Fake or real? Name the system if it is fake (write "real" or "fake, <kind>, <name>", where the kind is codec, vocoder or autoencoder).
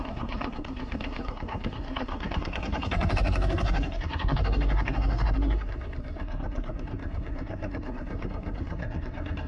fake, codec, SNAC